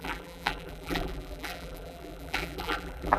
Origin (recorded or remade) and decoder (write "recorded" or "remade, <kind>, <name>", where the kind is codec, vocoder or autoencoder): remade, vocoder, BigVGAN v2